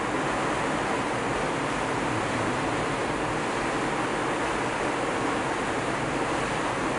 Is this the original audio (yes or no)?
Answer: yes